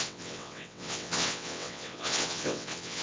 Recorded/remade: remade